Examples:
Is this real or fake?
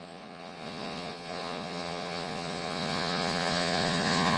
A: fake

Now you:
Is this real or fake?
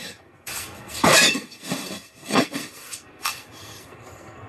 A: fake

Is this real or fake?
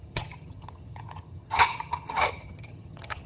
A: fake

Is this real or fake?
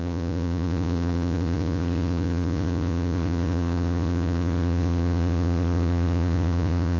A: fake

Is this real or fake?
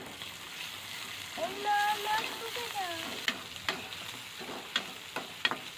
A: real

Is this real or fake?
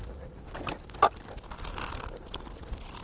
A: real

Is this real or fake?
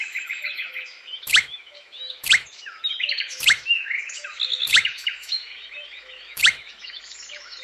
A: fake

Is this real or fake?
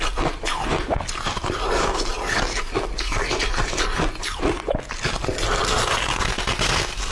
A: real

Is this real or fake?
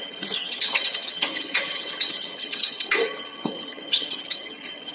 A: fake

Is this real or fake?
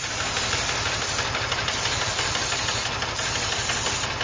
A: real